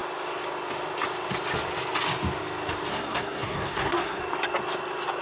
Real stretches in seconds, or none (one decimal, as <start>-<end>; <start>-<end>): 0.0-2.9; 4.2-5.2